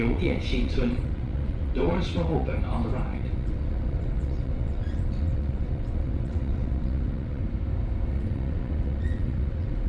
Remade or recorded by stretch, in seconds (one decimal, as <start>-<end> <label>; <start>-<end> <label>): 0.0-2.5 remade; 2.5-3.0 recorded; 3.0-7.4 remade; 7.4-8.1 recorded; 8.1-9.9 remade